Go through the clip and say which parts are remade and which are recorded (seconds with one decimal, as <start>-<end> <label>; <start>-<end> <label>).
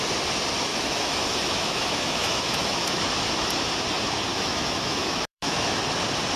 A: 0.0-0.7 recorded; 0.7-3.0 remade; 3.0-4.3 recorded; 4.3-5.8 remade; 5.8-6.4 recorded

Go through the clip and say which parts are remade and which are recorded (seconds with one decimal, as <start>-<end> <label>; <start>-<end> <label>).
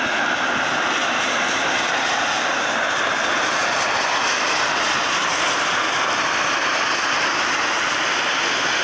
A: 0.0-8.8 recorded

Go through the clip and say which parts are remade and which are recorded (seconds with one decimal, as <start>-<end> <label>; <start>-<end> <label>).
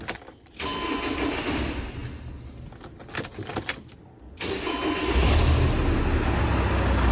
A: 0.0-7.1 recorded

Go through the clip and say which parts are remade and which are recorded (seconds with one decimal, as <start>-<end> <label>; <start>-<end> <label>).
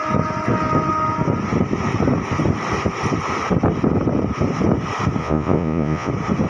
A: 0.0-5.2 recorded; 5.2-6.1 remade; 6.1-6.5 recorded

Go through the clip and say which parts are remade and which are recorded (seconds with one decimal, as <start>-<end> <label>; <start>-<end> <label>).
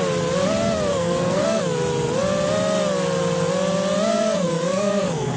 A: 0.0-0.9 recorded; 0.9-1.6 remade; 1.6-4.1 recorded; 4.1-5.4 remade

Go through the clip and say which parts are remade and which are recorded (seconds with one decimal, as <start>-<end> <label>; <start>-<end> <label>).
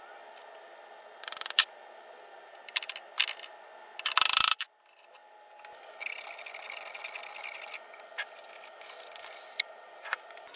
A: 0.0-10.6 recorded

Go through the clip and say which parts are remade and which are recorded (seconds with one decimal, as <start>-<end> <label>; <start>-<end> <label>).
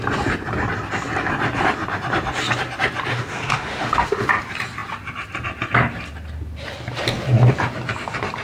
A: 0.0-3.1 recorded; 3.1-4.3 remade; 4.3-8.4 recorded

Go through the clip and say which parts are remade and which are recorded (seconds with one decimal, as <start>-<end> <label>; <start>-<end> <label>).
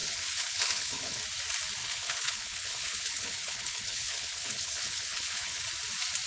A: 0.0-1.2 remade; 1.2-1.8 recorded; 1.8-5.6 remade; 5.6-6.3 recorded